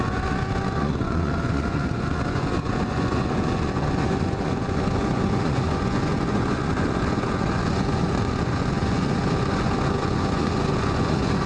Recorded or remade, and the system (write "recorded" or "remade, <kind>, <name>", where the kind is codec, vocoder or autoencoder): remade, vocoder, Vocos